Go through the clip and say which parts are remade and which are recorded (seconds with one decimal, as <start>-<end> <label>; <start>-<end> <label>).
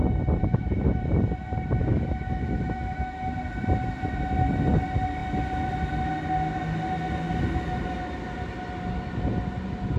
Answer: 0.0-0.4 recorded; 0.4-1.0 remade; 1.0-1.8 recorded; 1.8-3.3 remade; 3.3-10.0 recorded